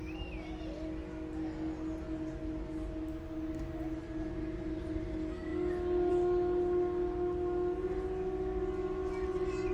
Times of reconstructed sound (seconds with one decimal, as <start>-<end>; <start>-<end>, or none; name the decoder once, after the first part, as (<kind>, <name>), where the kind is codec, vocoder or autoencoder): none